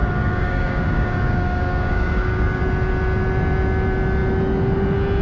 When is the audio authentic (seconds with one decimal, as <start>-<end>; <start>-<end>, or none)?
2.6-5.2